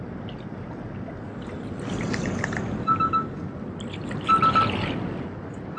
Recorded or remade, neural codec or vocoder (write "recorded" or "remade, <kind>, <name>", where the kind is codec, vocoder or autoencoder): recorded